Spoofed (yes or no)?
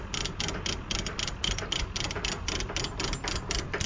no